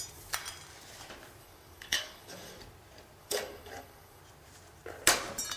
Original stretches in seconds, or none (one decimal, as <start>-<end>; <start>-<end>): 0.0-1.4; 2.6-3.2; 4.2-5.6